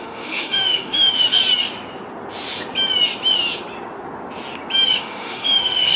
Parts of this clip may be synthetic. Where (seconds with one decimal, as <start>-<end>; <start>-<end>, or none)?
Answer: 0.0-1.4; 5.0-6.0